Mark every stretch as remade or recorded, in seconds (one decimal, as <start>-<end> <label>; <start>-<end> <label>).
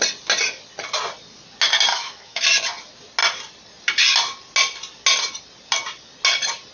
0.0-1.9 recorded; 1.9-2.4 remade; 2.4-6.7 recorded